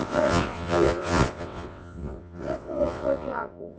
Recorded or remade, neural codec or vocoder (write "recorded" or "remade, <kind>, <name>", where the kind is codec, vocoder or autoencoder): remade, vocoder, WaveNeXt